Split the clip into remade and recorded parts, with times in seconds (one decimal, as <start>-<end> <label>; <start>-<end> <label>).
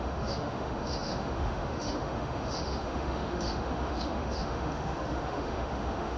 0.0-6.2 remade